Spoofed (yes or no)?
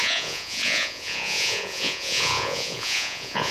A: yes